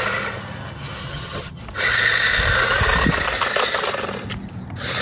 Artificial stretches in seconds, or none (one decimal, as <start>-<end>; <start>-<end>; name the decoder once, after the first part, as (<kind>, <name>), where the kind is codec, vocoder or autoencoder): 1.0-1.6 (vocoder, HiFi-GAN)

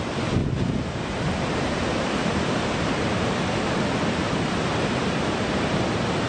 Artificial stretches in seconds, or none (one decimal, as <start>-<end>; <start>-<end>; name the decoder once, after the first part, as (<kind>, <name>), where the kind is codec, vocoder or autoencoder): 0.4-1.3 (vocoder, BigVGAN v2); 2.2-6.3

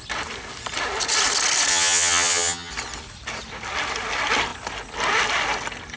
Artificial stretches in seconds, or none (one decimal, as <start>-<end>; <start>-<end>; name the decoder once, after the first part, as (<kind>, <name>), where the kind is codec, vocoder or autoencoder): 1.7-2.7 (vocoder, HiFi-GAN)

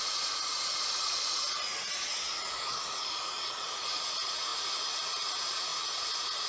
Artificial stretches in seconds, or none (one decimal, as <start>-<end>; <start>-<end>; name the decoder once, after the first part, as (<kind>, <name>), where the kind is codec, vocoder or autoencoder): 0.0-6.5 (vocoder, Vocos)

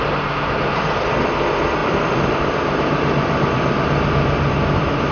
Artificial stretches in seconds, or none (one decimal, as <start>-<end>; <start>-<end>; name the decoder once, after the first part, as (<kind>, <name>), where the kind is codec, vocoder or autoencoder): 1.8-5.1 (vocoder, BigVGAN v2)

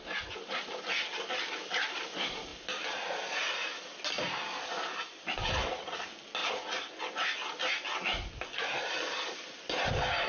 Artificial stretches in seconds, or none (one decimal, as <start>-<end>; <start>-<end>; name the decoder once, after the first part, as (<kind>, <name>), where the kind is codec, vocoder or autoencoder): none

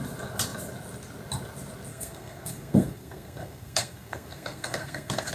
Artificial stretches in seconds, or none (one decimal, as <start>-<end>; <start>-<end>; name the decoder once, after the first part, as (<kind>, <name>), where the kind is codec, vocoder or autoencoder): 1.9-5.3 (codec, SNAC)

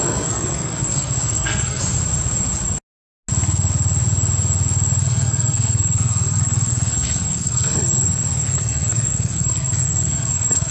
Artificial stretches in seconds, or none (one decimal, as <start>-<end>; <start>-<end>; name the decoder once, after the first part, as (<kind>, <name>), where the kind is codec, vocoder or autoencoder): 0.0-1.8 (codec, SNAC); 5.0-10.7